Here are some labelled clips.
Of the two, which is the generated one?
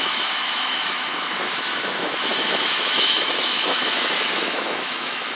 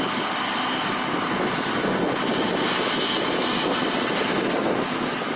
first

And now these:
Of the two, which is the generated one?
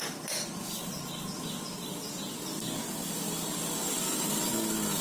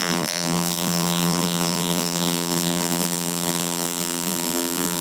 second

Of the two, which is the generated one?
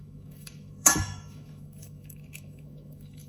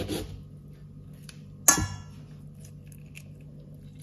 first